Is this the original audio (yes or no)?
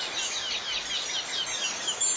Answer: yes